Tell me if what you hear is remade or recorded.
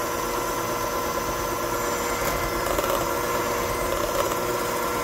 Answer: recorded